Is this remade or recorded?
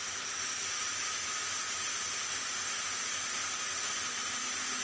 recorded